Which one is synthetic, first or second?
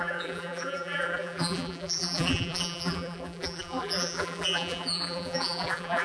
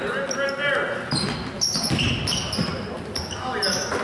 first